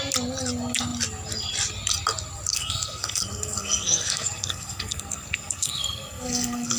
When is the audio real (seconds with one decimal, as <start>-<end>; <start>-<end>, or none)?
0.0-2.5

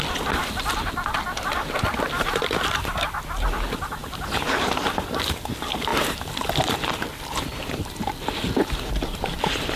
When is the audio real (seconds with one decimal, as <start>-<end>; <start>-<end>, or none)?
0.0-9.8

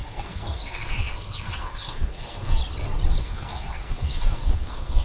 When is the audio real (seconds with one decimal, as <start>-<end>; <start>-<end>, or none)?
2.6-3.2

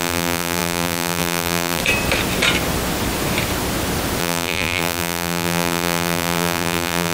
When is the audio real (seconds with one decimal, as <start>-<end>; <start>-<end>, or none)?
1.8-4.2

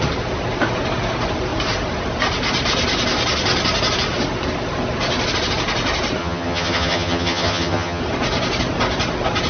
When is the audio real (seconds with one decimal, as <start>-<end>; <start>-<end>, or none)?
0.0-6.2; 8.0-9.5